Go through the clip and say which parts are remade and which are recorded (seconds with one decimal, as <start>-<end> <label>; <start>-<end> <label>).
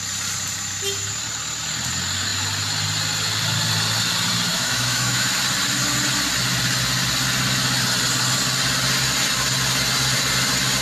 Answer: 0.0-4.5 recorded; 4.5-5.3 remade; 5.3-10.8 recorded